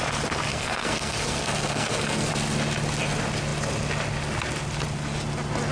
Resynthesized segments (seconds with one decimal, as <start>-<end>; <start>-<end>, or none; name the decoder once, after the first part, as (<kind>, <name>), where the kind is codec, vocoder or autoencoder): 0.5-2.3 (codec, SNAC)